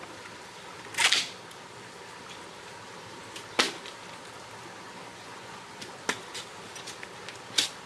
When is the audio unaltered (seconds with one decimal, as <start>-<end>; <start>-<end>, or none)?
0.0-5.1; 6.0-7.9